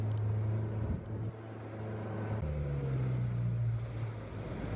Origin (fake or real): real